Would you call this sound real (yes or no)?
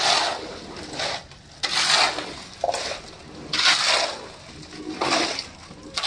yes